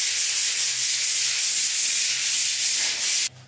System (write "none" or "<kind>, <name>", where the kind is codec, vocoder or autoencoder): none